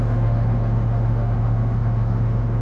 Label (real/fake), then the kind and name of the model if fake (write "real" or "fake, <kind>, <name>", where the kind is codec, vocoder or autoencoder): fake, autoencoder, DAC-VAE